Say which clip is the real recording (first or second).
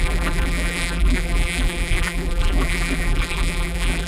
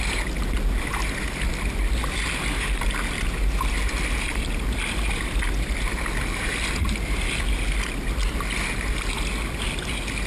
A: second